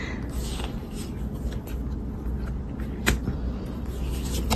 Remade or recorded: recorded